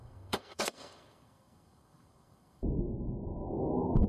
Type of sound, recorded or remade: remade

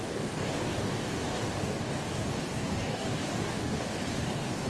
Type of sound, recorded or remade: remade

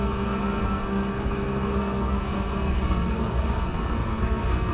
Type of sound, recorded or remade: remade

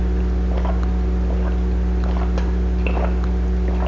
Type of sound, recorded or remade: recorded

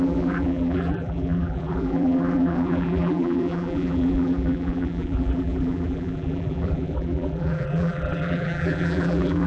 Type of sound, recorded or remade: remade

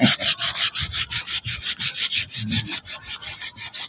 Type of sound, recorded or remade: recorded